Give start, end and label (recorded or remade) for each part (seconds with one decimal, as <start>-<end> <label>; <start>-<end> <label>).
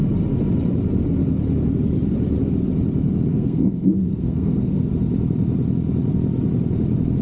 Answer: 0.0-3.3 recorded; 3.3-4.9 remade; 4.9-7.2 recorded